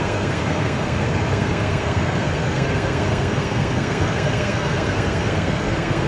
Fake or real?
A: fake